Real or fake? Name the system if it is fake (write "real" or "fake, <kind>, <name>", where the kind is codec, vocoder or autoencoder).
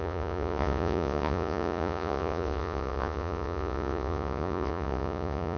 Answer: fake, vocoder, Vocos